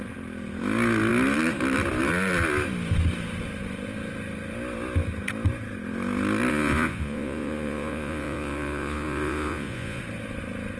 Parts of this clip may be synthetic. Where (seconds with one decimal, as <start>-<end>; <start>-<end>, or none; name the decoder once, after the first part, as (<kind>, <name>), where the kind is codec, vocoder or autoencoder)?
6.5-10.0 (vocoder, Vocos)